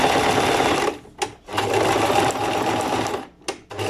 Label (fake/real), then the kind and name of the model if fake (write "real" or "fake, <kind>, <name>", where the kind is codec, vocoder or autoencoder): real